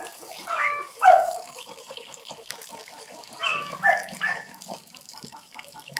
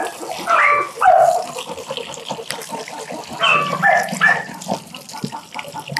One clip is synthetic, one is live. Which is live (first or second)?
second